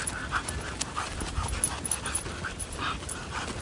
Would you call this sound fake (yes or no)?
no